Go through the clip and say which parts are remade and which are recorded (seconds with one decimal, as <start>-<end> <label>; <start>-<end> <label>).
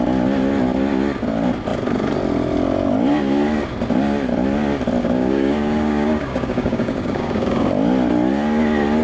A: 0.0-5.0 recorded; 5.0-7.7 remade; 7.7-9.0 recorded